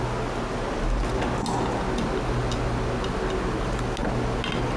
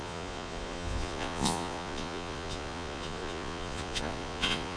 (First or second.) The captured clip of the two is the first